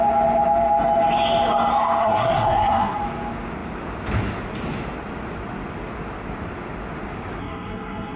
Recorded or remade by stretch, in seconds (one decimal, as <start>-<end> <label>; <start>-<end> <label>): 0.0-2.0 recorded; 2.0-3.0 remade; 3.0-7.4 recorded; 7.4-8.2 remade